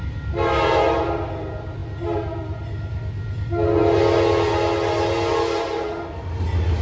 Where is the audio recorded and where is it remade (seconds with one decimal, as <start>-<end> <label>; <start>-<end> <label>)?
0.0-6.8 recorded